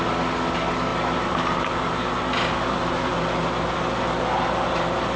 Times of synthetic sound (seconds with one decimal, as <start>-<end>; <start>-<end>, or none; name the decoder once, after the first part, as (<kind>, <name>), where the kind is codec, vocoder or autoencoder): none